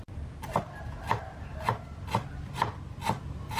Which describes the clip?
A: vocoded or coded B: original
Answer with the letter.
B